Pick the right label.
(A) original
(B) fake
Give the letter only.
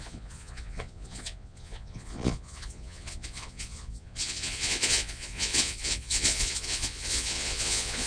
B